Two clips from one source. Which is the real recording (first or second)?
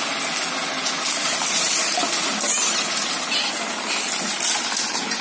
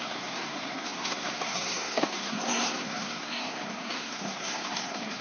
first